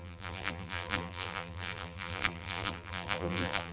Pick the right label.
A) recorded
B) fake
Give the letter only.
B